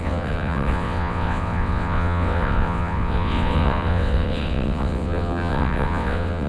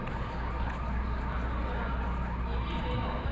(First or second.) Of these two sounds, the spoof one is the first